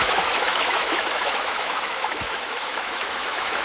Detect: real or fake fake